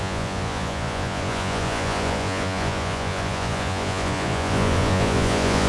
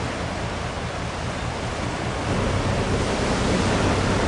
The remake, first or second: first